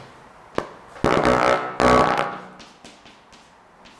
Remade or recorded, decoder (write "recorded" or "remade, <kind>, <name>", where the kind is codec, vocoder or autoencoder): recorded